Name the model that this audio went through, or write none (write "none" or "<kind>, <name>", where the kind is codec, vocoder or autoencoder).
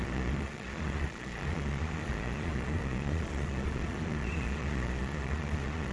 vocoder, Vocos